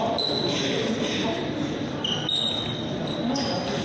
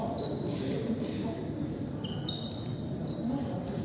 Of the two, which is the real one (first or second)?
first